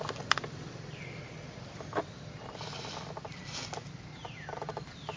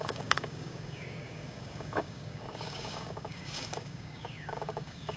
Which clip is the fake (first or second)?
second